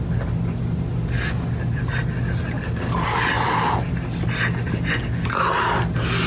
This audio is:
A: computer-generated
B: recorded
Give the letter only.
B